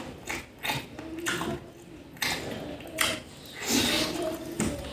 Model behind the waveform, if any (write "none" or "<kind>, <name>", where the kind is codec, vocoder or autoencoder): none